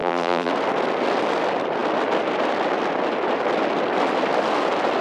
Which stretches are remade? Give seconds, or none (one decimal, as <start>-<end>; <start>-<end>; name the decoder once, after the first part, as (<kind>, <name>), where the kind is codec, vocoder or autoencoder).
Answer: 0.0-0.5 (vocoder, BigVGAN v2)